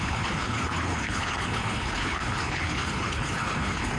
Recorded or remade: remade